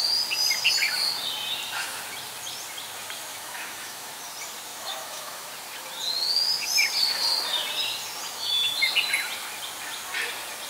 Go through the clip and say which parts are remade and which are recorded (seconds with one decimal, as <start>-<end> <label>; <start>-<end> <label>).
0.0-3.3 recorded; 3.3-4.1 remade; 4.1-4.7 recorded; 4.7-5.5 remade; 5.5-8.3 recorded; 8.3-8.8 remade; 8.8-10.7 recorded